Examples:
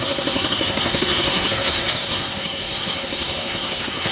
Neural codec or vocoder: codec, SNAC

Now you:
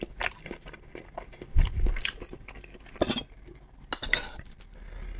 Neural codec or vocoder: none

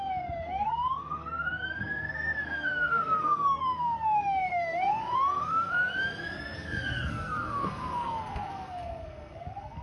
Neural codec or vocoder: codec, SNAC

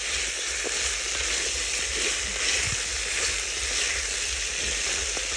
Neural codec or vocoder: none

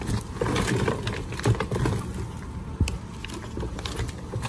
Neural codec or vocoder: none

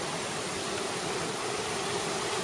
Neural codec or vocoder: none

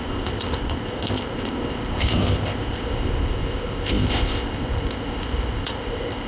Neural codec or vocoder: codec, ZipCodec